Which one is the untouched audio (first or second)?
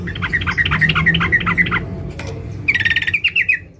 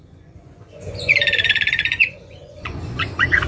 first